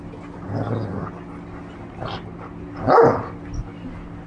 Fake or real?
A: real